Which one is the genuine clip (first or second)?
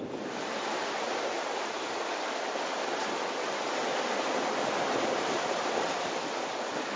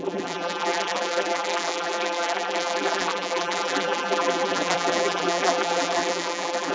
first